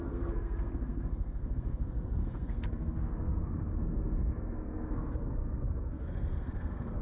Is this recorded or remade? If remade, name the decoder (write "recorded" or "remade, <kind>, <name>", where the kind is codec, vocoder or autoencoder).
remade, codec, SNAC